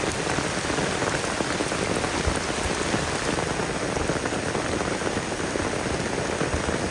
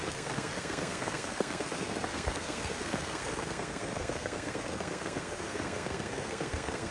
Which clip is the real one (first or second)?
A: first